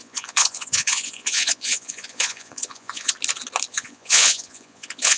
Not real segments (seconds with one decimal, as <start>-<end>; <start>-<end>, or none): 0.0-3.1; 3.7-5.2